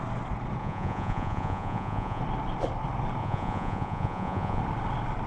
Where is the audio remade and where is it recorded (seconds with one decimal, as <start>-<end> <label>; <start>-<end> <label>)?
0.0-0.6 recorded; 0.6-2.2 remade; 2.2-3.2 recorded; 3.2-4.6 remade; 4.6-5.3 recorded